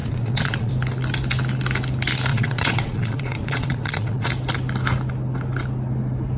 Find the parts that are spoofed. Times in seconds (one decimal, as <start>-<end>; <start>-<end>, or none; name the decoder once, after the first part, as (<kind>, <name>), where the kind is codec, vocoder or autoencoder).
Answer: 0.0-0.7 (vocoder, Vocos); 2.3-4.3